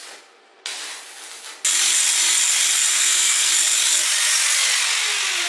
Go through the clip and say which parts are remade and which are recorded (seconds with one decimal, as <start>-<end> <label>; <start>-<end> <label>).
0.0-2.9 recorded; 2.9-3.5 remade; 3.5-5.5 recorded

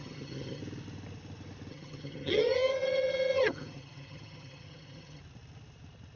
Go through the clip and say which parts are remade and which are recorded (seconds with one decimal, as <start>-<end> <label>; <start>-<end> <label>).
0.0-0.6 remade; 0.6-1.7 recorded; 1.7-5.2 remade; 5.2-6.2 recorded